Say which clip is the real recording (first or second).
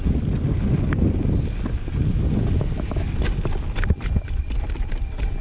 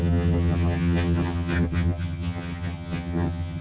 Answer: first